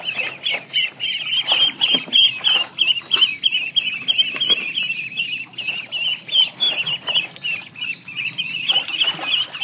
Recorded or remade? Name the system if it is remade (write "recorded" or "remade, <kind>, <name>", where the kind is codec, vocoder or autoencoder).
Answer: recorded